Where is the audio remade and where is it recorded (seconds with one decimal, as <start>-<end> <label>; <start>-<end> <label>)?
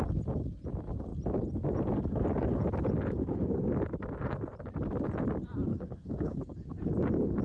0.0-5.7 recorded; 5.7-6.9 remade; 6.9-7.4 recorded